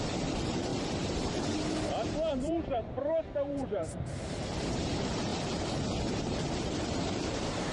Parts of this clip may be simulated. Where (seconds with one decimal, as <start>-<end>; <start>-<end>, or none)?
0.0-0.7; 2.3-5.3; 6.1-7.7